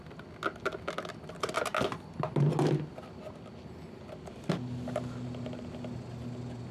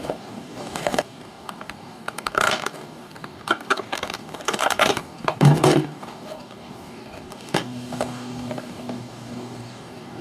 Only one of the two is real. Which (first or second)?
first